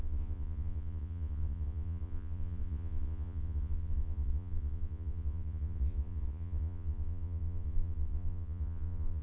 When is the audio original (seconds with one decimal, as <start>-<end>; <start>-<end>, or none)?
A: none